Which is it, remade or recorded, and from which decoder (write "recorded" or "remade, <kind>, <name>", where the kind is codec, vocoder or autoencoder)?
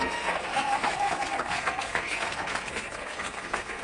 remade, codec, SNAC